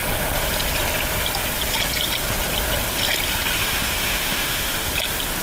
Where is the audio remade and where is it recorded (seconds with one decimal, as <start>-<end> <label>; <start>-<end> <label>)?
0.0-3.6 recorded; 3.6-4.9 remade; 4.9-5.4 recorded